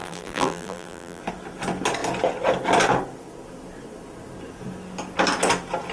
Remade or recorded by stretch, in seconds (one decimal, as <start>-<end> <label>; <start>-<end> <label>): 0.0-1.2 remade; 1.2-5.9 recorded